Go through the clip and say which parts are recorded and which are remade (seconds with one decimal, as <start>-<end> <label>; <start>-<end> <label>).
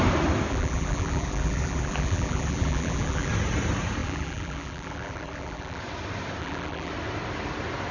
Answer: 0.0-0.5 recorded; 0.5-3.3 remade; 3.3-4.0 recorded; 4.0-5.8 remade; 5.8-6.4 recorded; 6.4-6.9 remade; 6.9-7.9 recorded